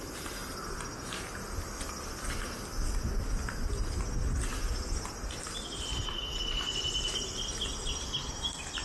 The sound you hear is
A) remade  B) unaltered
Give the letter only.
B